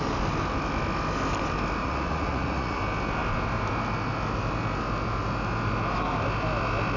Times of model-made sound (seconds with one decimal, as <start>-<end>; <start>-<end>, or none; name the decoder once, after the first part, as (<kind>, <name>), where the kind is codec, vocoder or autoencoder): 1.8-2.8 (vocoder, Vocos)